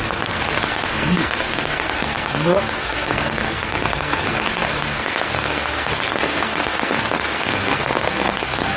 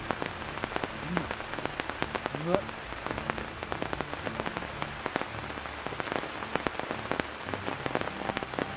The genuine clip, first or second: second